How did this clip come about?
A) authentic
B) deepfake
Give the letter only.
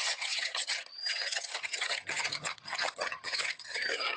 B